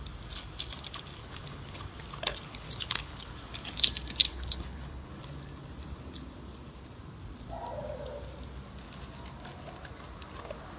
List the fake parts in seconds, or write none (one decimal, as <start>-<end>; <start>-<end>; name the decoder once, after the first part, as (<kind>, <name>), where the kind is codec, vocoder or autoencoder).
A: 1.2-1.8 (codec, HILCodec); 2.5-3.3; 4.3-5.1